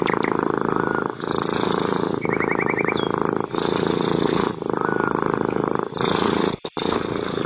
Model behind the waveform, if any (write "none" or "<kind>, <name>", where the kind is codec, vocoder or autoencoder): none